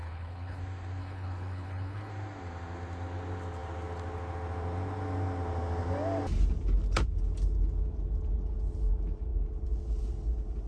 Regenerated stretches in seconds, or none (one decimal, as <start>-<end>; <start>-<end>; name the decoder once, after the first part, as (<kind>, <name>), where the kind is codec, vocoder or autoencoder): 0.0-0.6 (codec, HILCodec); 1.0-2.1